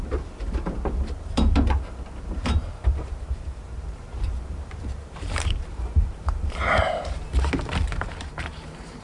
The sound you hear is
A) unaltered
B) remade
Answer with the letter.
B